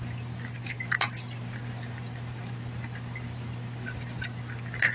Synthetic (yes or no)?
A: no